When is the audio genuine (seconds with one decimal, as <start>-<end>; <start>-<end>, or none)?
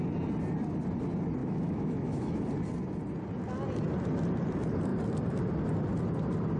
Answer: 0.0-1.4; 2.4-6.6